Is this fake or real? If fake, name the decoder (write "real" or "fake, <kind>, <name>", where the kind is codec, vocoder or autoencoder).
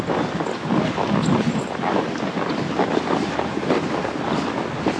real